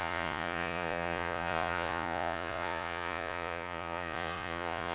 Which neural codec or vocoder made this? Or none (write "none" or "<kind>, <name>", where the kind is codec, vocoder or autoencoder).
vocoder, Vocos